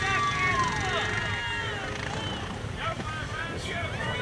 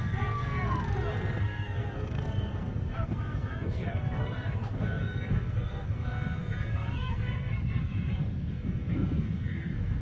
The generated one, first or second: second